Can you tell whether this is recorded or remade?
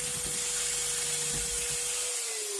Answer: recorded